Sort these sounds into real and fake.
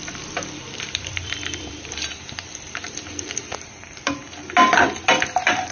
fake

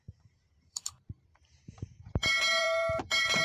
fake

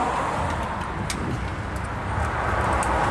fake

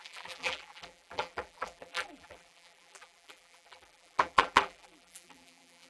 fake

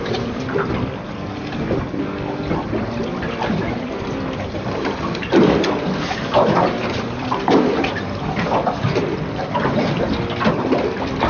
fake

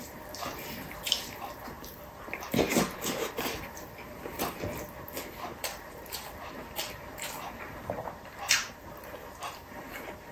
fake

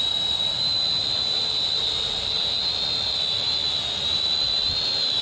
real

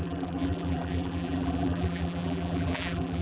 fake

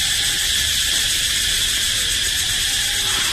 fake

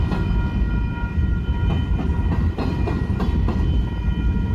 real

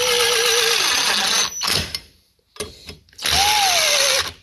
real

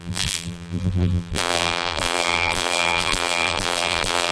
fake